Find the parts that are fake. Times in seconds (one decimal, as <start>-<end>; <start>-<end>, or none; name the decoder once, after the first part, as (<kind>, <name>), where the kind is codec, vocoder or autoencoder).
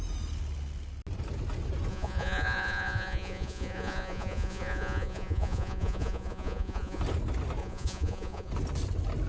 1.9-7.0 (vocoder, Vocos); 7.6-8.5